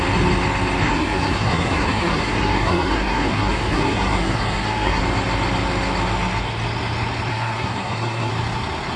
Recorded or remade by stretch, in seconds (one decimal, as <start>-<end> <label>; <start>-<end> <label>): 0.0-0.8 recorded; 0.8-5.0 remade; 5.0-7.3 recorded; 7.3-8.3 remade; 8.3-9.0 recorded